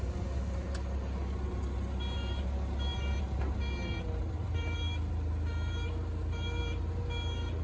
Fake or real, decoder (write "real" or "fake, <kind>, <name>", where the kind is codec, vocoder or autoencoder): real